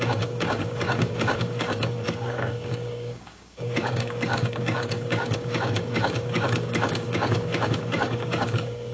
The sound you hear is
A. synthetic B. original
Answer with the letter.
A